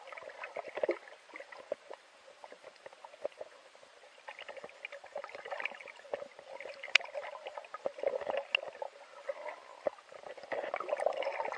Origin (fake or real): real